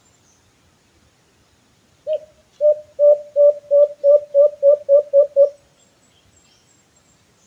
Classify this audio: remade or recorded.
recorded